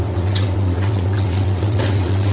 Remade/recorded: remade